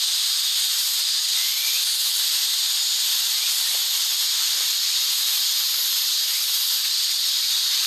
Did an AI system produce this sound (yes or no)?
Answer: no